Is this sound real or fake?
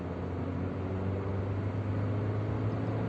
real